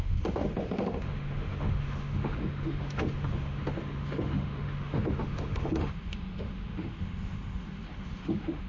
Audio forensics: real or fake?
fake